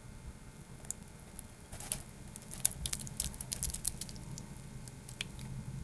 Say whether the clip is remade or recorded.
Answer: recorded